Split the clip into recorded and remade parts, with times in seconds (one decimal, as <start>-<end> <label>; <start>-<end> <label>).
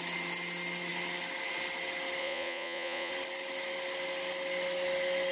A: 0.0-2.2 recorded; 2.2-3.1 remade; 3.1-5.3 recorded